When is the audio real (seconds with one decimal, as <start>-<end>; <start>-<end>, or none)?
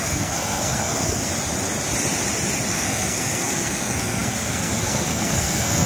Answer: 1.3-2.7